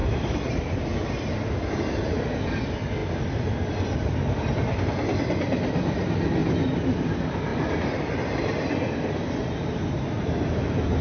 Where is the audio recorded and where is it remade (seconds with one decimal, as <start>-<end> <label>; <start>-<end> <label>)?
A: 0.0-0.8 remade; 0.8-7.5 recorded; 7.5-11.0 remade